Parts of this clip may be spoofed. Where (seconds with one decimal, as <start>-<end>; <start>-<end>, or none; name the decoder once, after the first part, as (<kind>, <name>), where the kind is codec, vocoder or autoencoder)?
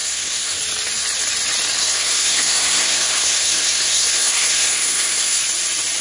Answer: 0.0-0.6 (codec, SNAC); 1.8-5.4